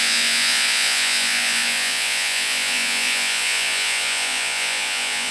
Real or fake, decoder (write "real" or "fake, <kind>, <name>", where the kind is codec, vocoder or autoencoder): fake, vocoder, Vocos